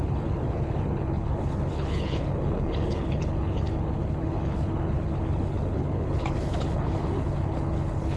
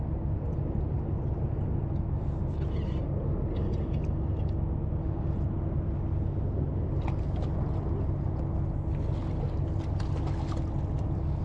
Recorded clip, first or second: second